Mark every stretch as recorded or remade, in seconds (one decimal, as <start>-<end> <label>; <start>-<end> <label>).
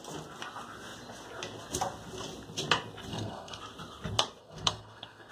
0.0-3.1 recorded; 3.1-3.6 remade; 3.6-4.4 recorded; 4.4-5.3 remade